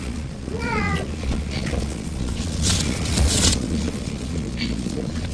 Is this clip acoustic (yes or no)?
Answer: no